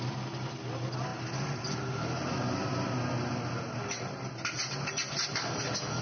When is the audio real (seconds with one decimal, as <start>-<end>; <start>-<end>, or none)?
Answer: 0.0-6.0